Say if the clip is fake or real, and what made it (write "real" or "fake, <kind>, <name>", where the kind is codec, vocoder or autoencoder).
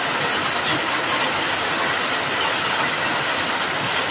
real